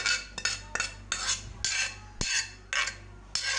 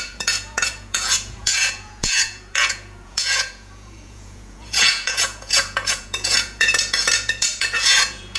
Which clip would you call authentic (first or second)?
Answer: first